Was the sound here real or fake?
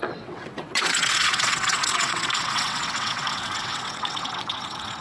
fake